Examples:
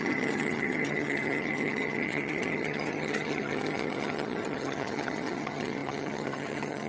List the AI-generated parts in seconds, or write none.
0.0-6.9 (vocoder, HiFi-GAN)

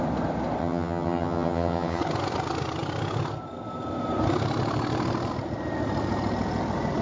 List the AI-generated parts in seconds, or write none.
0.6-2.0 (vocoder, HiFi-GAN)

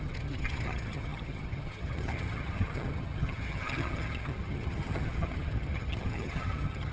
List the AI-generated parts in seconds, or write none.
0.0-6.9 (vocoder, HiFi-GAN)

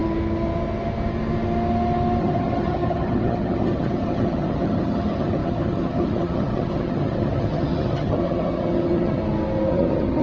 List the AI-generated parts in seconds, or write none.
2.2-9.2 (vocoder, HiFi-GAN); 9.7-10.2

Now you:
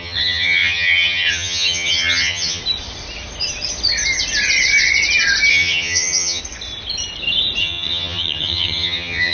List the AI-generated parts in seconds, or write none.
0.0-2.6 (vocoder, HiFi-GAN); 5.5-6.4; 7.6-9.3